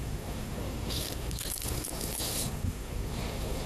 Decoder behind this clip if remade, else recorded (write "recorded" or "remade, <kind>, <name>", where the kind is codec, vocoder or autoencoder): remade, codec, SNAC